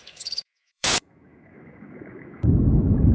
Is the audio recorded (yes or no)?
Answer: no